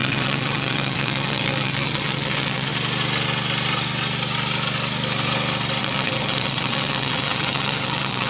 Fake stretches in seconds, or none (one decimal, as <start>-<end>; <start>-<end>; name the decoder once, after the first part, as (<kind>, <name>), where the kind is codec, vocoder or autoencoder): 0.0-2.7 (vocoder, WaveNeXt); 5.8-8.3